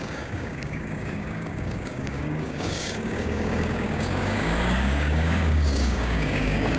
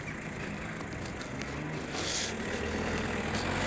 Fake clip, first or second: first